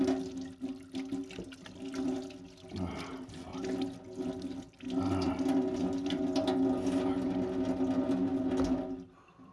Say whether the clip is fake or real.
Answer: real